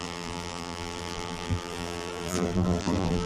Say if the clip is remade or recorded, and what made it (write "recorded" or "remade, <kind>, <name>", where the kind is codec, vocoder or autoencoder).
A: remade, vocoder, BigVGAN v2